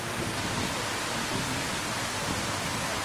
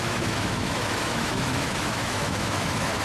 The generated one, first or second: second